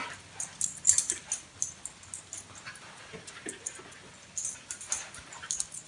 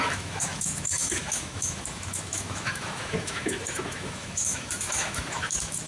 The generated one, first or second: second